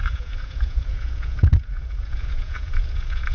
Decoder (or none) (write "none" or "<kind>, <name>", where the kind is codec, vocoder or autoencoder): vocoder, Vocos